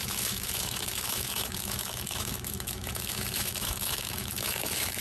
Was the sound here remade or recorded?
remade